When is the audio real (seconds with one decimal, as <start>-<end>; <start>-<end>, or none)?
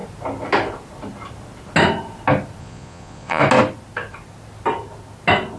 0.0-2.6; 3.4-5.6